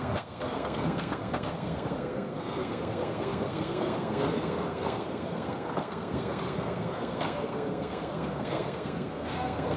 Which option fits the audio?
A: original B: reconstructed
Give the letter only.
B